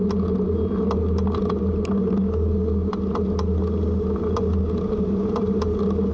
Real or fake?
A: real